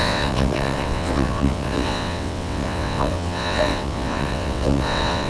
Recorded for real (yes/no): no